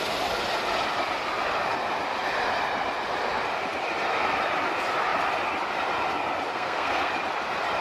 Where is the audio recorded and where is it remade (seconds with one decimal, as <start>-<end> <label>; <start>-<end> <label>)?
0.0-6.5 recorded; 6.5-7.1 remade; 7.1-7.8 recorded